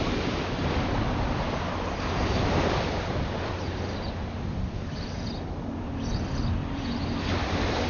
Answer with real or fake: real